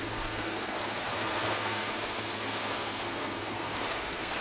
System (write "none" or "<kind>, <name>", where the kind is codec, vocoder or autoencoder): codec, SNAC